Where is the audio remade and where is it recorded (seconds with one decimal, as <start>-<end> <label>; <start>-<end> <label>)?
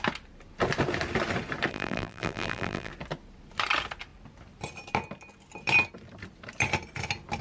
0.0-1.7 recorded; 1.7-2.9 remade; 2.9-7.4 recorded